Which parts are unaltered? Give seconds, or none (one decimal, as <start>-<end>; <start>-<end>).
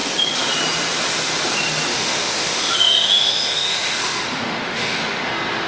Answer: 0.0-1.9; 5.3-5.7